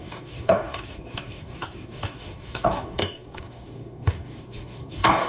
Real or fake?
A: fake